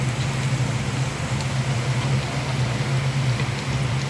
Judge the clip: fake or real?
real